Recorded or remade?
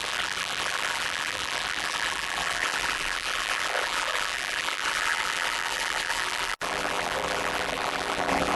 remade